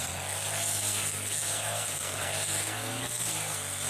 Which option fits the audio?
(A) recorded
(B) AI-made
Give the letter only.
B